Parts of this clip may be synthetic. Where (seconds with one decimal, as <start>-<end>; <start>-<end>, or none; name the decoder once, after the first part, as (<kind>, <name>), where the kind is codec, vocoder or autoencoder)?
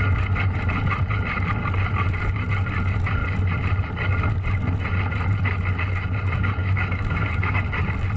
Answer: 6.6-7.6 (autoencoder, DAC-VAE)